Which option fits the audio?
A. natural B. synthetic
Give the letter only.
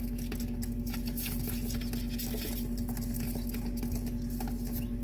A